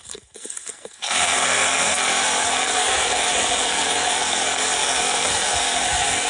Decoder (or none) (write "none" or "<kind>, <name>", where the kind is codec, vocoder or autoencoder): codec, SNAC